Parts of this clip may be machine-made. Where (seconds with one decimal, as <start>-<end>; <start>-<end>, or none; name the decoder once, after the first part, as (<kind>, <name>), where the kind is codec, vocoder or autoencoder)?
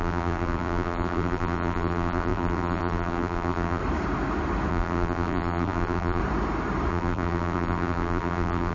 0.0-3.8 (vocoder, BigVGAN v2); 4.7-6.2; 6.9-8.7